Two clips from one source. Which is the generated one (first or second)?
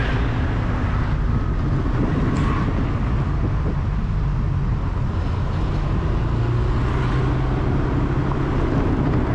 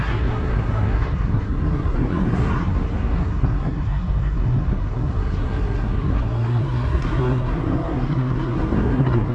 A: second